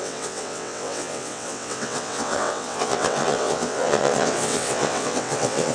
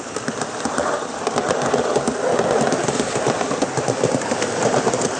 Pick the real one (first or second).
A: second